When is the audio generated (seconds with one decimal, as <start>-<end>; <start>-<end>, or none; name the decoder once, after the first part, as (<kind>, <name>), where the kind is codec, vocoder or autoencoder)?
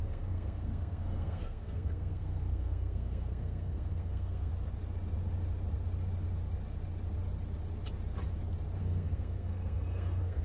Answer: 0.0-4.5 (codec, SNAC); 8.8-10.4